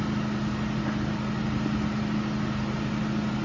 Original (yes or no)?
yes